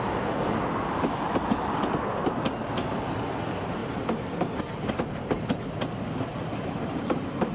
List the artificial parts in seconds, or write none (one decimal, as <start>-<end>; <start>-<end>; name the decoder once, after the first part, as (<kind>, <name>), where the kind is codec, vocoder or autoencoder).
none